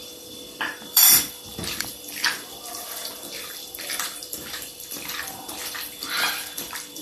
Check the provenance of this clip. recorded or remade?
remade